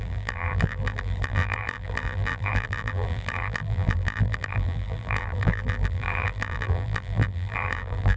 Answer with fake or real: fake